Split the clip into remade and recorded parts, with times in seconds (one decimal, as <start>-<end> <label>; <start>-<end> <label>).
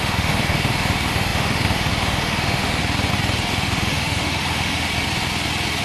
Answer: 0.0-2.8 remade; 2.8-3.5 recorded; 3.5-4.9 remade; 4.9-5.8 recorded